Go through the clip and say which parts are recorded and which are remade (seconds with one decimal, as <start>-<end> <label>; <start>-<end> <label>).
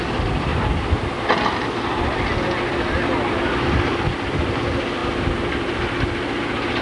0.0-6.8 recorded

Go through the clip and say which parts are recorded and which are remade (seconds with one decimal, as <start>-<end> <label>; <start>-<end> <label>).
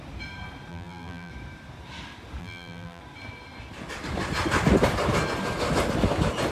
0.0-0.7 recorded; 0.7-1.3 remade; 1.3-2.4 recorded; 2.4-3.0 remade; 3.0-6.5 recorded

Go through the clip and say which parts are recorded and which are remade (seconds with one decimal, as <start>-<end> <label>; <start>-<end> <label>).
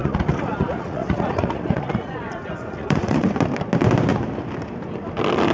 0.0-3.3 remade; 3.3-5.5 recorded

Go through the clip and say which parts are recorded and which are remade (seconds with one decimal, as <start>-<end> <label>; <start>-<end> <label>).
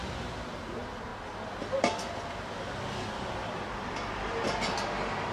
0.0-5.3 recorded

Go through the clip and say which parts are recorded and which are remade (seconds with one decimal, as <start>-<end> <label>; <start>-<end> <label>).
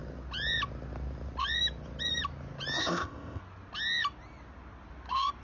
0.0-2.8 recorded; 2.8-3.4 remade; 3.4-5.4 recorded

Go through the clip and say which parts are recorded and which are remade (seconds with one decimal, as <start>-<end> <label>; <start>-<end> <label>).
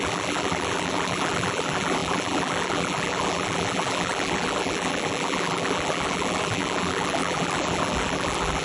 0.0-8.6 remade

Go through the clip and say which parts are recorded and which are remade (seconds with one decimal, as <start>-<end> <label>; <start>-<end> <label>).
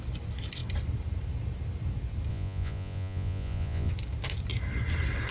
0.0-2.3 recorded; 2.3-3.9 remade; 3.9-5.3 recorded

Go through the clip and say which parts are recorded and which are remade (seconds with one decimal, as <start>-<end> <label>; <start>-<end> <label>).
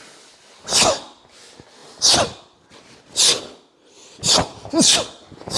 0.0-5.6 recorded